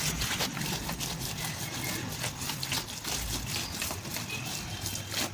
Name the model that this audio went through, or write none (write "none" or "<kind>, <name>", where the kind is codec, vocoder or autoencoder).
none